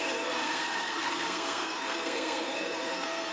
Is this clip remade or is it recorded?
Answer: remade